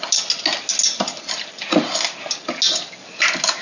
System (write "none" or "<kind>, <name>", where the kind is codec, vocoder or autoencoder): none